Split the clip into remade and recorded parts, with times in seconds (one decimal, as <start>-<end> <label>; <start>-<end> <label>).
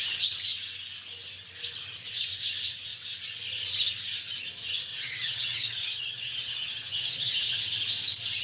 0.0-4.9 recorded; 4.9-7.6 remade; 7.6-8.4 recorded